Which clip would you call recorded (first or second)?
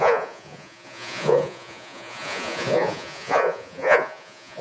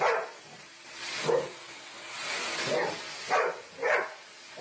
second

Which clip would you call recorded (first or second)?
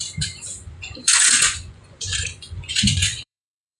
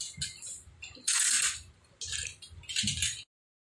second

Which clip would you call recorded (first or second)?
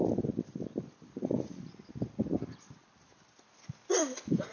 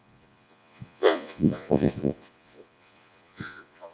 first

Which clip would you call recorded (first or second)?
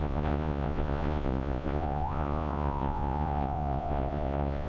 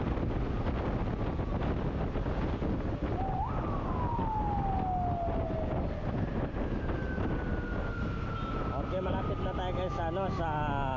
second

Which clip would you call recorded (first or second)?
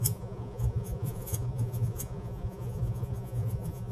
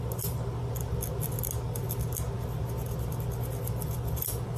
second